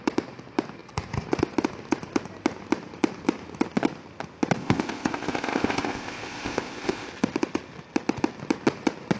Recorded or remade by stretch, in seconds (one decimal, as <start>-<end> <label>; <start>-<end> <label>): 0.0-4.6 recorded; 4.6-7.1 remade; 7.1-9.2 recorded